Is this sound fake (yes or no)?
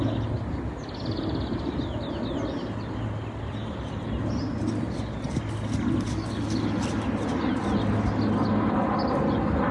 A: no